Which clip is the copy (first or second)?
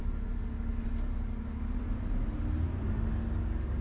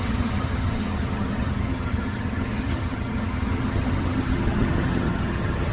second